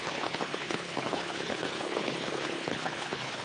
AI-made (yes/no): yes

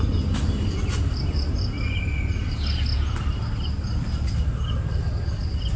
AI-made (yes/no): no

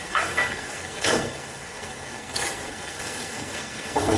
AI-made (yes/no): yes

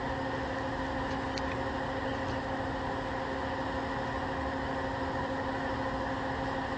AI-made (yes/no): no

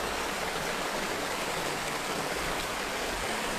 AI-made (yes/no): yes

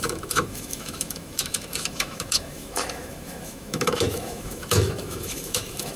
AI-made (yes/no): yes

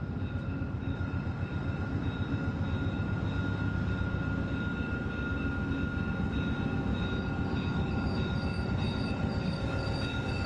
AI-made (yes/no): no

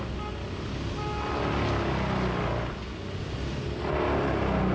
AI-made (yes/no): no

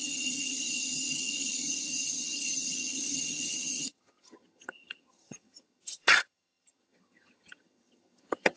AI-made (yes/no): yes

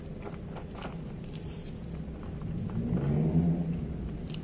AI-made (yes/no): no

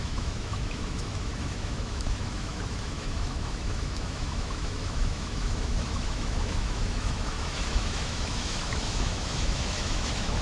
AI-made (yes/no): yes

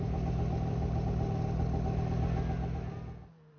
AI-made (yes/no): no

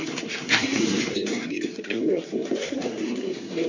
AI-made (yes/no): yes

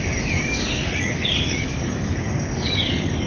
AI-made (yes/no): yes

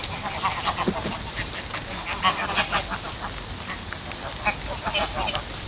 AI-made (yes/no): no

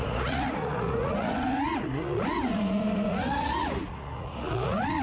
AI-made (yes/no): yes